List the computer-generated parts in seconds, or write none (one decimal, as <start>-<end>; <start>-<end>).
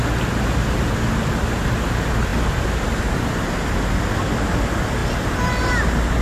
none